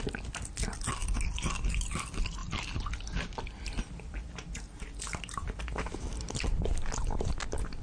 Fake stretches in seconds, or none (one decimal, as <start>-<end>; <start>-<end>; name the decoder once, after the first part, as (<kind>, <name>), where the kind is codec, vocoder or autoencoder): none